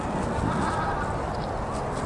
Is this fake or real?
real